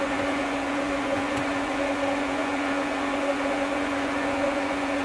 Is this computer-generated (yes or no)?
yes